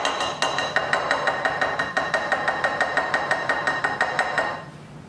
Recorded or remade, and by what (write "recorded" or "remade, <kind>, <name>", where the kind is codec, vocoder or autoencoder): recorded